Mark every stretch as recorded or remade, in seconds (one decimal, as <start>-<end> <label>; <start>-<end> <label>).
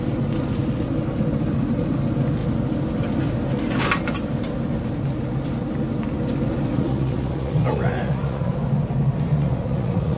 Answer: 0.0-6.7 recorded; 6.7-8.5 remade; 8.5-9.3 recorded; 9.3-10.2 remade